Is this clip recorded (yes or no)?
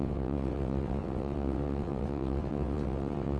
no